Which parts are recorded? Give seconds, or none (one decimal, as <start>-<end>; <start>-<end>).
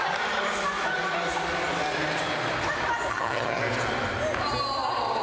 0.0-3.1; 3.6-5.2